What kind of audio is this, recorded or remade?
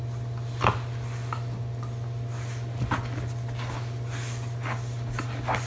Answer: recorded